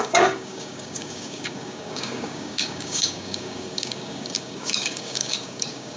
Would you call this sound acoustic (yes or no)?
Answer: no